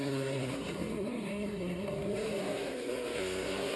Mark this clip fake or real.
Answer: fake